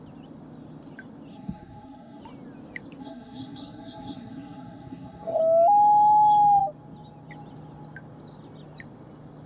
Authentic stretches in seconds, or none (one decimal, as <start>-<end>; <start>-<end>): 0.0-1.3; 2.2-3.0; 5.4-9.5